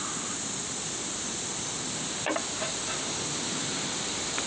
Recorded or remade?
remade